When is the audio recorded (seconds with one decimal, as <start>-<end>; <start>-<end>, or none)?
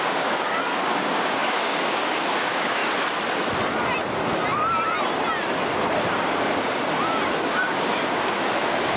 2.8-7.3